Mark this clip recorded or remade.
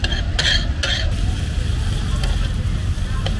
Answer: recorded